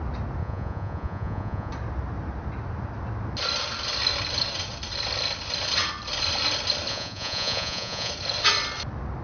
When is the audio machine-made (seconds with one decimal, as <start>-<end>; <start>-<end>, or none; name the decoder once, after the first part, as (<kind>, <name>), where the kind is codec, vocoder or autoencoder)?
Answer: 0.4-1.7 (vocoder, Vocos); 6.9-8.1